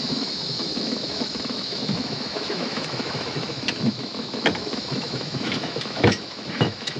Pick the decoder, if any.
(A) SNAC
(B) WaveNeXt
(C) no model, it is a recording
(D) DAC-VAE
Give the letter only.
D